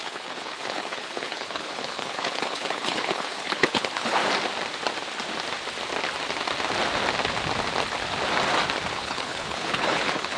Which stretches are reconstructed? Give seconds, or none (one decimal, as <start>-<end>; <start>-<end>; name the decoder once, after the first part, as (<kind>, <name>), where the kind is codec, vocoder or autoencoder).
0.0-4.2 (codec, HILCodec); 8.9-10.4